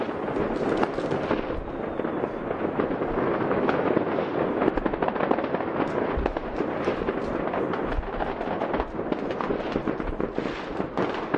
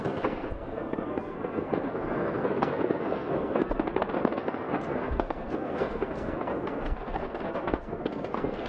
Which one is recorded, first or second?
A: first